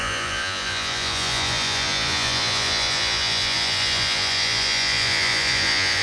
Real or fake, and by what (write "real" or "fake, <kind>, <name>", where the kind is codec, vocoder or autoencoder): fake, vocoder, Vocos